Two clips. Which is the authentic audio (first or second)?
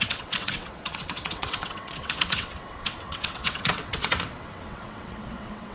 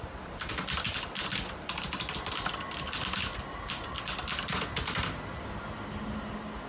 second